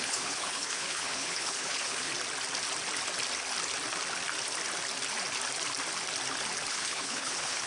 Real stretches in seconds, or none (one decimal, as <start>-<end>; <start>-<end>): 2.1-6.7